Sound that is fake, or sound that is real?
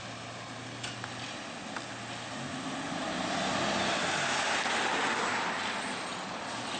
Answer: real